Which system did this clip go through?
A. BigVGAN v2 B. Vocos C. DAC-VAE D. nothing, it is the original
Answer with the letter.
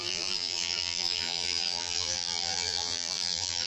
A